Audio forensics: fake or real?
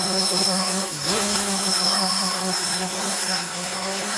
fake